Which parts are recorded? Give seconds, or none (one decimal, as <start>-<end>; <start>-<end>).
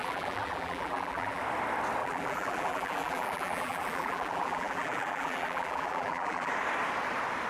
1.4-2.0; 6.5-7.5